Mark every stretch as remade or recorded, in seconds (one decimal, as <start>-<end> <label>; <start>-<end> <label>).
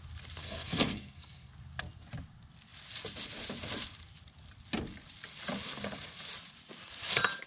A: 0.0-0.4 recorded; 0.4-1.5 remade; 1.5-7.5 recorded